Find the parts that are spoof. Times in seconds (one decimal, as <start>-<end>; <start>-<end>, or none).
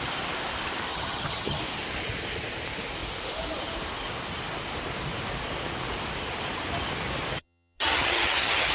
0.9-1.6; 7.4-8.7